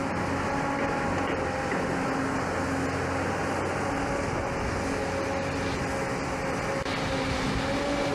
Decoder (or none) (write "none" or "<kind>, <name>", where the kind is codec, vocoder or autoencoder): none